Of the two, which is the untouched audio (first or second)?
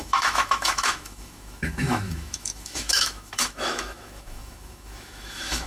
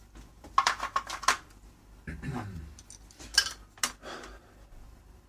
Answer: second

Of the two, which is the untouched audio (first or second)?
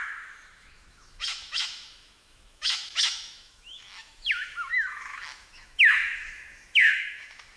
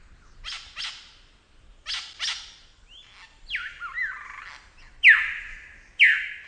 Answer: second